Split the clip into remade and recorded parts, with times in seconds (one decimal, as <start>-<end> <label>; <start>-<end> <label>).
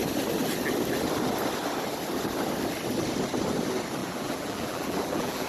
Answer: 0.0-4.0 recorded; 4.0-5.5 remade